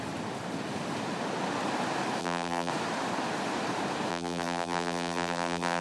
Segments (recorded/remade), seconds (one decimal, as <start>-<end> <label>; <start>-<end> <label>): 0.0-2.2 recorded; 2.2-2.7 remade; 2.7-4.1 recorded; 4.1-5.8 remade